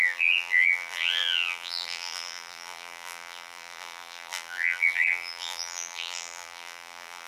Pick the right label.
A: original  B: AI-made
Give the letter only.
B